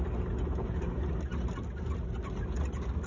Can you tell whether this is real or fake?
real